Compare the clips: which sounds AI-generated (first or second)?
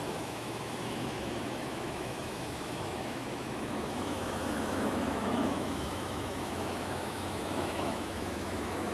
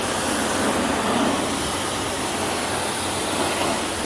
first